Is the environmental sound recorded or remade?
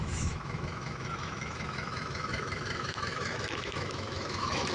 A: remade